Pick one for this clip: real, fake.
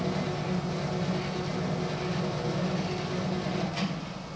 real